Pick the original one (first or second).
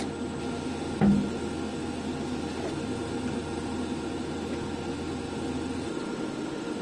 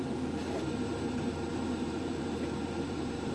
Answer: first